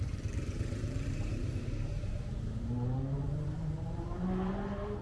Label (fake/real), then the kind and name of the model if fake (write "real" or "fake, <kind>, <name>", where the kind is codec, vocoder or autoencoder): fake, vocoder, BigVGAN v2